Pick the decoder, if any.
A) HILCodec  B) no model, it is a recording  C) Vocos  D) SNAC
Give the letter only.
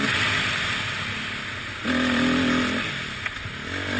B